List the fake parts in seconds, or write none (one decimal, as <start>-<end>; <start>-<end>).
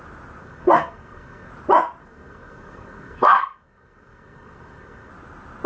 0.4-1.5; 2.0-5.1